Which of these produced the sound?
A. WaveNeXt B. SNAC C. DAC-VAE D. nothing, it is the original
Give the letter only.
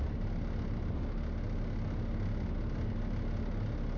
D